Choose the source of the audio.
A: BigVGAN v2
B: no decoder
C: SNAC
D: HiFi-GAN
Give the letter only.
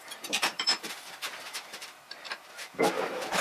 A